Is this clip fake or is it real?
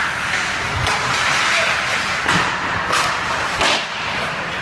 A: real